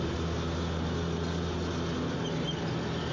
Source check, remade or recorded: recorded